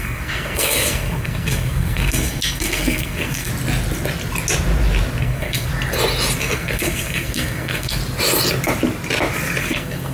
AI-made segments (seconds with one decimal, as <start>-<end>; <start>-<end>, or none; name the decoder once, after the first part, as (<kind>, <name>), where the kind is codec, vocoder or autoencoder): 0.0-3.5 (codec, SNAC); 5.2-5.7; 6.4-8.0; 9.6-10.1